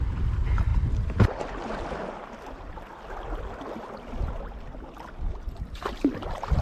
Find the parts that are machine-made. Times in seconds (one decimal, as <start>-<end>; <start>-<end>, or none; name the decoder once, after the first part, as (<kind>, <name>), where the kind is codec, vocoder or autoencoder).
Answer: none

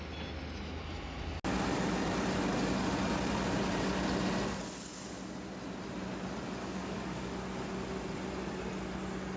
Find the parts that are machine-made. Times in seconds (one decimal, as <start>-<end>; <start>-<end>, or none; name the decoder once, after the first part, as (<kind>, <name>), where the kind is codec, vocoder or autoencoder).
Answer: 6.6-7.3 (codec, DAC)